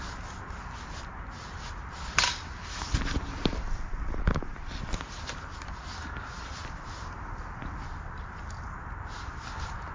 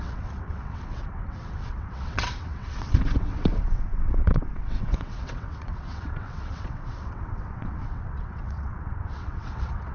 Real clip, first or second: first